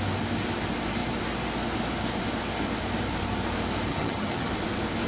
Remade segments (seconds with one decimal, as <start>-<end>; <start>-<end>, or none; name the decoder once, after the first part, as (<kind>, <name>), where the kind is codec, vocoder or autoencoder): 3.9-4.5 (vocoder, HiFi-GAN)